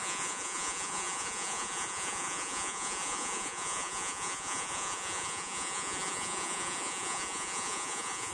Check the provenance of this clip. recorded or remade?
remade